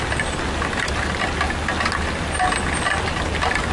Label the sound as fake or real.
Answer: real